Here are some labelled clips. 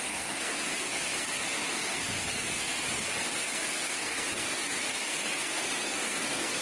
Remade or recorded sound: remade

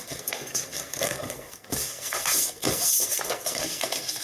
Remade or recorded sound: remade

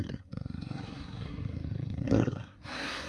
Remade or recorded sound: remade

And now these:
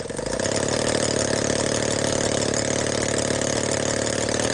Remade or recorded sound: recorded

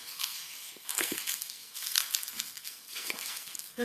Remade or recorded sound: remade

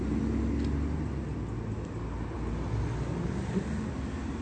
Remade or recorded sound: recorded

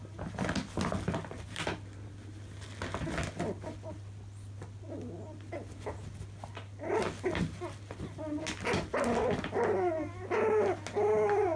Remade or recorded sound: recorded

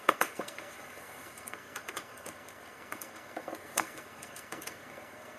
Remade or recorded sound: remade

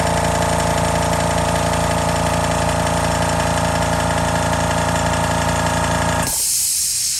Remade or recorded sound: recorded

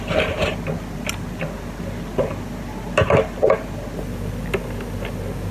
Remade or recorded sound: recorded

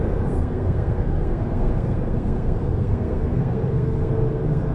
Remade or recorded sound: remade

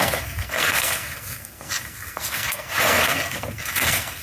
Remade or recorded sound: remade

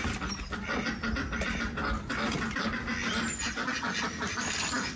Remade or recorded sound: recorded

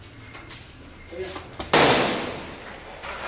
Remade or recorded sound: recorded